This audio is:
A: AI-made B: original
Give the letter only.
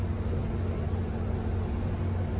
B